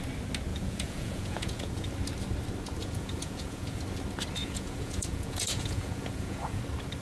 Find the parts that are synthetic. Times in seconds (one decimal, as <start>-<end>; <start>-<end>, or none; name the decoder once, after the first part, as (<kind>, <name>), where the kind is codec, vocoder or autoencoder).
0.5-1.9 (vocoder, Vocos); 2.8-3.8; 4.4-6.6